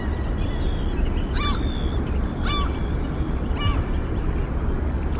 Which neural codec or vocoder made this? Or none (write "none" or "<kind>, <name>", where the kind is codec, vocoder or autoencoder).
none